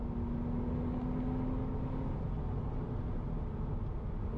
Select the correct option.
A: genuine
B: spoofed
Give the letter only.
A